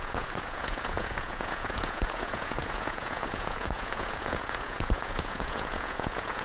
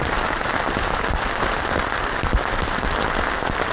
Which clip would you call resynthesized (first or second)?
first